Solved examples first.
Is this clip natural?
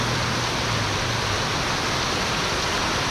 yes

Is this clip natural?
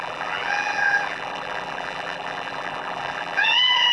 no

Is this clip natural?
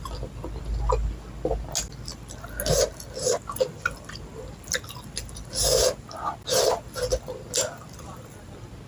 yes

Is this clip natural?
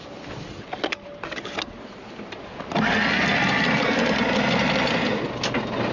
yes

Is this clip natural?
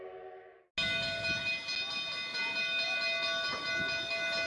yes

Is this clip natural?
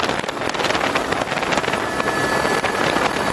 yes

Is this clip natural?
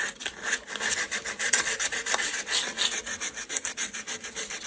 yes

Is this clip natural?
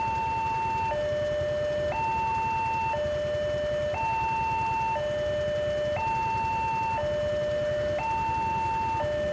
yes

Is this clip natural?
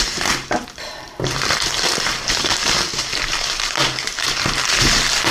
no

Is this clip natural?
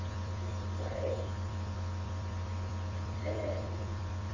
no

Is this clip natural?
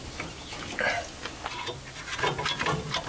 yes